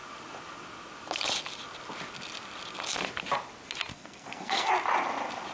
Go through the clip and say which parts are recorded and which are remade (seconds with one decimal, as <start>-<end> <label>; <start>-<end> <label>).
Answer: 0.0-3.9 recorded; 3.9-4.7 remade; 4.7-5.5 recorded